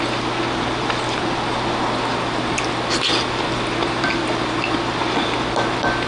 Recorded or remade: recorded